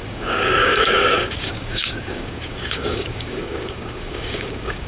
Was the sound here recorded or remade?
remade